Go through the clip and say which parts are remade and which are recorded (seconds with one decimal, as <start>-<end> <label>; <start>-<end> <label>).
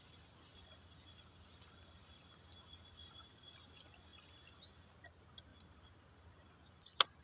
0.0-7.2 recorded